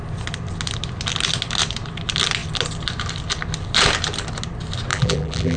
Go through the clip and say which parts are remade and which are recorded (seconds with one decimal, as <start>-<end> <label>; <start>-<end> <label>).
0.0-4.9 recorded; 4.9-5.6 remade